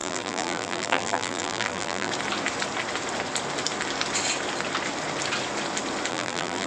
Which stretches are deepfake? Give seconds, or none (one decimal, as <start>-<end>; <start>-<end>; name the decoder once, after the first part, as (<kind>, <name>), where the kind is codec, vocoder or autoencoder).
0.0-2.1 (vocoder, BigVGAN v2); 6.1-6.7